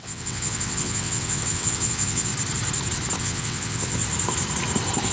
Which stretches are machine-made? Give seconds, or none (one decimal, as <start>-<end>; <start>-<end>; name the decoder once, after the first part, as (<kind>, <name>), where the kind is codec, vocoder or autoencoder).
0.0-2.3 (vocoder, WaveNeXt); 3.2-4.0